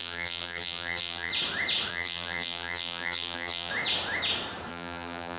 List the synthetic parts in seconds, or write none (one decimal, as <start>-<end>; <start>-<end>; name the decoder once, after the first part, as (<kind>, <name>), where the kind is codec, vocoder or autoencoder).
0.0-1.3 (vocoder, BigVGAN v2); 1.9-3.7; 4.7-5.4